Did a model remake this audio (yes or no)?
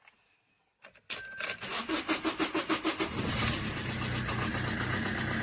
no